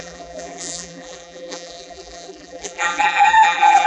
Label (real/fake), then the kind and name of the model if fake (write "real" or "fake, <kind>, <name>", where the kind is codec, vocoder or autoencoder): fake, vocoder, BigVGAN v2